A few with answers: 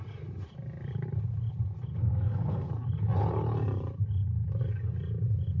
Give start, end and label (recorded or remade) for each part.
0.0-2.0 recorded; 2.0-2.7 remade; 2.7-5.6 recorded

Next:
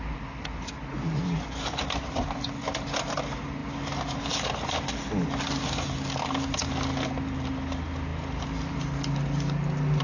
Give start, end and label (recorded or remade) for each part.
0.0-10.0 recorded

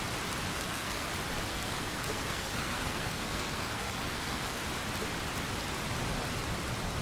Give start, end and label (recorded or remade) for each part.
0.0-0.5 recorded; 0.5-1.1 remade; 1.1-1.5 recorded; 1.5-4.6 remade; 4.6-7.0 recorded

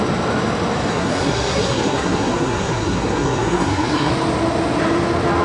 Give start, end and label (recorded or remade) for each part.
0.0-0.9 recorded; 0.9-4.1 remade; 4.1-5.4 recorded

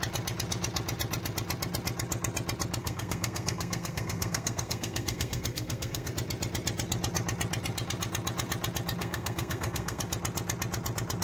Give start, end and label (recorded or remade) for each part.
0.0-2.8 recorded; 2.8-6.1 remade; 6.1-9.0 recorded; 9.0-10.0 remade; 10.0-11.2 recorded

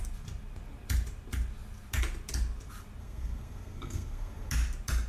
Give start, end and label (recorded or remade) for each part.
0.0-3.0 recorded; 3.0-4.5 remade; 4.5-5.1 recorded

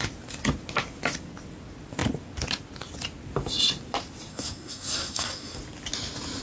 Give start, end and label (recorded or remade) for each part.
0.0-4.3 recorded; 4.3-5.6 remade; 5.6-6.4 recorded